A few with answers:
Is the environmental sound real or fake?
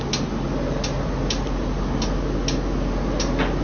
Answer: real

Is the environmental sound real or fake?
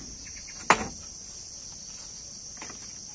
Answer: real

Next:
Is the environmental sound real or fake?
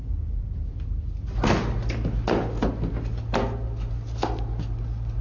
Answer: real